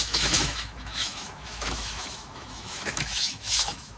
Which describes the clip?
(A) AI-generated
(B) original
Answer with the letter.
A